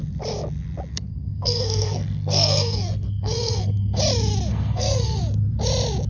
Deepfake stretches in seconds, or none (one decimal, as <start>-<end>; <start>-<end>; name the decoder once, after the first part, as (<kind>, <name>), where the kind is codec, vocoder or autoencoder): 0.9-4.0 (codec, SNAC); 4.5-5.2